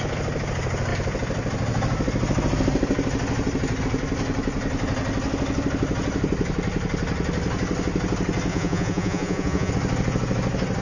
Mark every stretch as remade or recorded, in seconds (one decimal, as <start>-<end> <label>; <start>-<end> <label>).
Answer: 0.0-8.5 recorded; 8.5-9.7 remade; 9.7-10.8 recorded